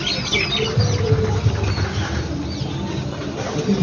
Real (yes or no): yes